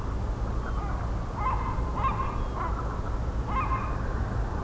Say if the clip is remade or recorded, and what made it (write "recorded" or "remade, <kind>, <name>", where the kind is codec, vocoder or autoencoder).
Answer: recorded